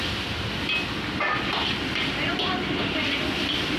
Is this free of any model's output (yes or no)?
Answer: yes